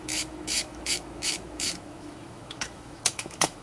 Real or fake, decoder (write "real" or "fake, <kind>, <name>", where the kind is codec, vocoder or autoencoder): fake, autoencoder, DAC-VAE